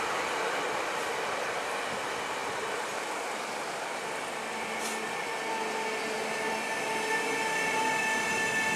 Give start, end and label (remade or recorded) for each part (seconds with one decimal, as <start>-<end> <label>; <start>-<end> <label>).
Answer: 0.0-8.8 recorded